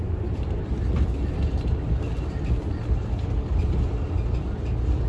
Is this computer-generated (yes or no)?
no